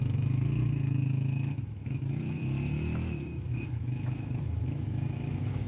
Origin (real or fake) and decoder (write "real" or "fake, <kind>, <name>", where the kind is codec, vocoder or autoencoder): fake, autoencoder, DAC-VAE